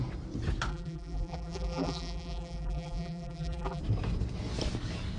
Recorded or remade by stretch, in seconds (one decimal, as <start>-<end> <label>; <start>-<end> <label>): 0.0-0.7 recorded; 0.7-3.8 remade; 3.8-5.2 recorded